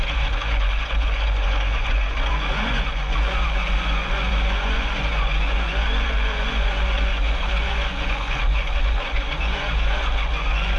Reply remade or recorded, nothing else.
remade